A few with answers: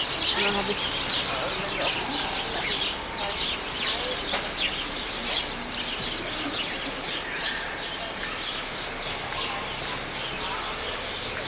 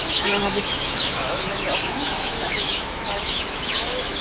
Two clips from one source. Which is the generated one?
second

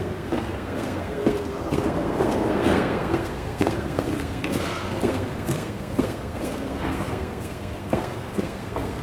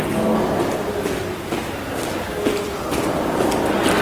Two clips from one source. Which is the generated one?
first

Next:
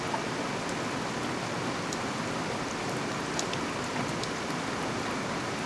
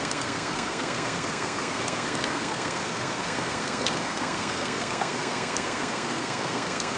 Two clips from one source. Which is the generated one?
second